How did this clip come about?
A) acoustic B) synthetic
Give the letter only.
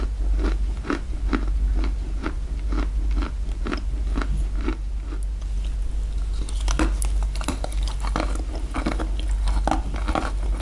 A